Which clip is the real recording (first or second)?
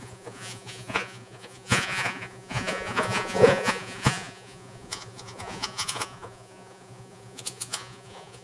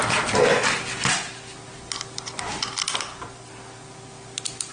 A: second